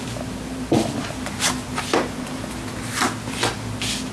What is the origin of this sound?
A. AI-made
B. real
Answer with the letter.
B